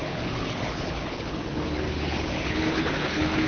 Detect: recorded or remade remade